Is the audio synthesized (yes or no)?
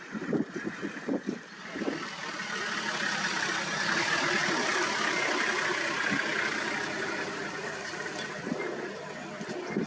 no